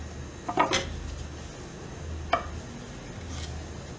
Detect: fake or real real